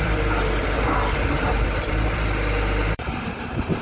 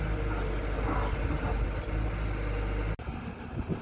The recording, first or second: second